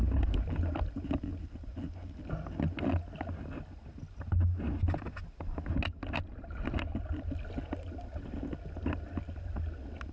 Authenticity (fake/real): real